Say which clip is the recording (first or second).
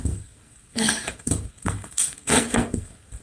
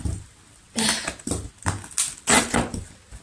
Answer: second